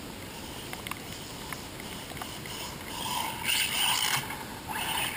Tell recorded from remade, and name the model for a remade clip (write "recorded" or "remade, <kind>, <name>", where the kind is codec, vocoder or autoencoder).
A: remade, vocoder, BigVGAN v2